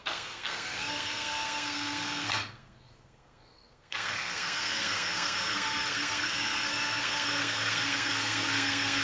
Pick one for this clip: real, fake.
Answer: fake